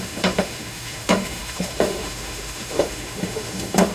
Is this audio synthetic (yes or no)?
yes